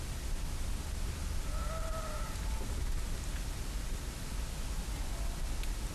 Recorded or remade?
recorded